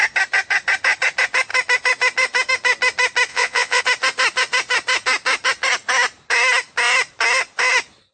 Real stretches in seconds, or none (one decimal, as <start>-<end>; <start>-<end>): 0.0-3.3; 3.8-8.1